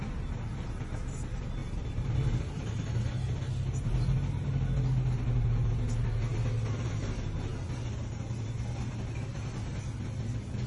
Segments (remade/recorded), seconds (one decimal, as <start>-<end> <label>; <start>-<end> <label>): 0.0-10.7 recorded